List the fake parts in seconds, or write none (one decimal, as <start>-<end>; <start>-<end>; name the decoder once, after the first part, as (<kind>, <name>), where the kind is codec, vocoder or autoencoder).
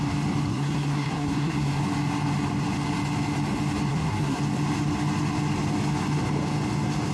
0.5-1.8 (codec, SNAC); 3.9-4.4